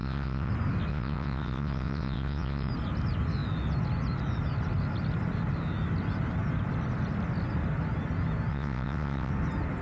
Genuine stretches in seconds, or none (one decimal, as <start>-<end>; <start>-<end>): 0.5-0.9; 2.7-8.5; 9.3-9.8